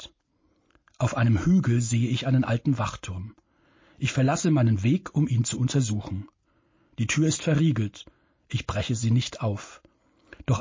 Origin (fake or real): real